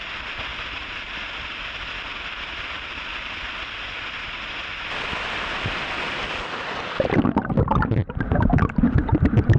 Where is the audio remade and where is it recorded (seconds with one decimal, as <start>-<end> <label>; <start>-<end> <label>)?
0.0-0.5 remade; 0.5-4.0 recorded; 4.0-9.6 remade